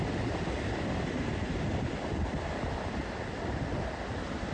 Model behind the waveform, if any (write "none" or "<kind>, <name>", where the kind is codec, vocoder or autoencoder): none